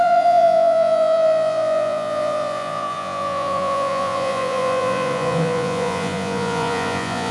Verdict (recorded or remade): remade